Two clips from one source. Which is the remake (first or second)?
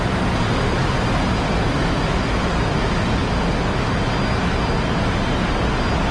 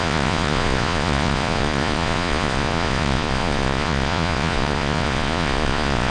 second